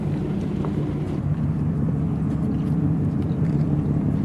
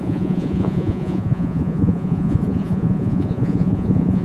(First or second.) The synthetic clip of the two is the second